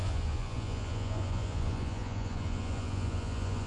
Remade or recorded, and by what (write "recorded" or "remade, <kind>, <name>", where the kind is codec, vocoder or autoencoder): remade, vocoder, Vocos